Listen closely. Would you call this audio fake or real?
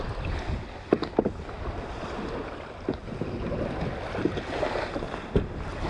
real